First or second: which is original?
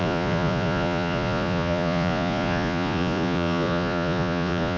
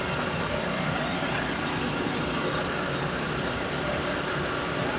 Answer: second